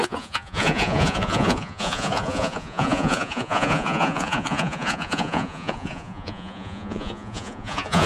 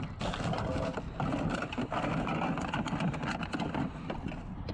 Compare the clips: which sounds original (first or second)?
second